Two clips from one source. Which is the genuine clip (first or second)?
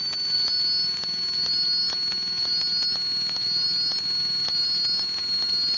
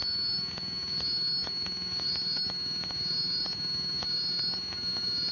first